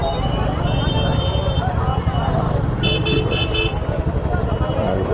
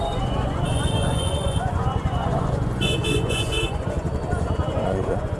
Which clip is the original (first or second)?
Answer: first